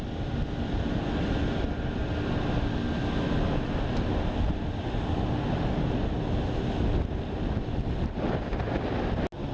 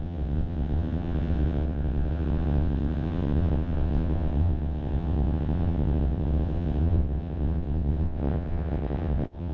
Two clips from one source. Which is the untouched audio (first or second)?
first